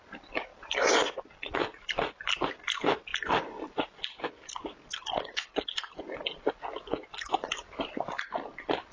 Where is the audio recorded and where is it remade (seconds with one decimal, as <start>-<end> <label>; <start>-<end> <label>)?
0.0-8.9 recorded